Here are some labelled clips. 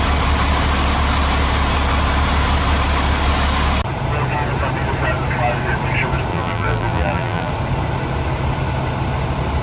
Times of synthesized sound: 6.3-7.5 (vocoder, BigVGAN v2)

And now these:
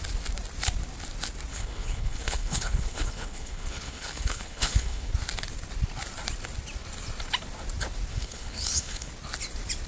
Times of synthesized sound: 1.5-5.1 (codec, HILCodec); 8.1-9.1

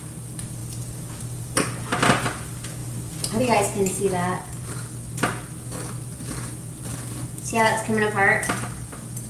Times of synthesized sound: 6.9-7.9 (codec, DAC)

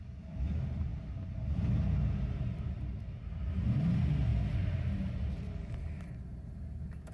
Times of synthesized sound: none

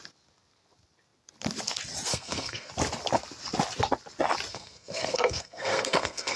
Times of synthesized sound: 2.1-2.7 (codec, SNAC); 4.5-6.4

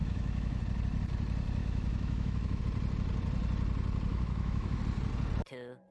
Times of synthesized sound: 0.0-0.6 (autoencoder, DAC-VAE); 1.6-2.6; 4.1-4.8

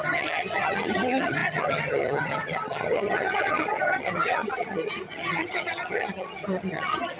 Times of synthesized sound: 0.0-7.2 (vocoder, HiFi-GAN)